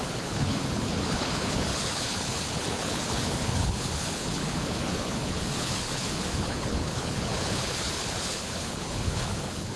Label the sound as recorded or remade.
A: remade